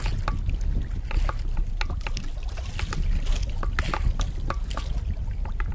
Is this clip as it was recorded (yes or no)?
yes